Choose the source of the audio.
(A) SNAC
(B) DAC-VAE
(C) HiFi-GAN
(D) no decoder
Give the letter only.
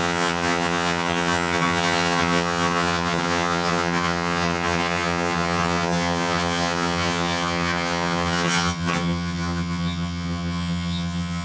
C